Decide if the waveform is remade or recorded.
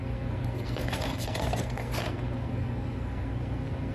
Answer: remade